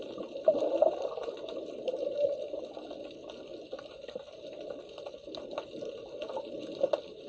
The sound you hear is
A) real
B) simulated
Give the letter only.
A